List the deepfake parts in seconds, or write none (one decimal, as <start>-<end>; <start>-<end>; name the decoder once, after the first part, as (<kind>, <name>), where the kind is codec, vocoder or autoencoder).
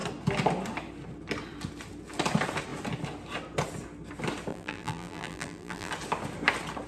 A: 4.5-5.9 (vocoder, BigVGAN v2)